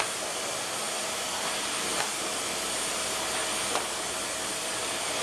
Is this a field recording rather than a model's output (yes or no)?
yes